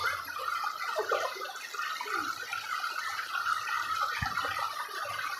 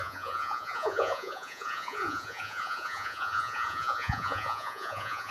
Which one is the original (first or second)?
first